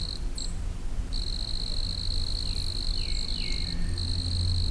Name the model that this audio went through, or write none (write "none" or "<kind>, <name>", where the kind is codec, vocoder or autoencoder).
none